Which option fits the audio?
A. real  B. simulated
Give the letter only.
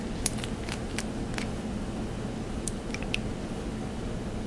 A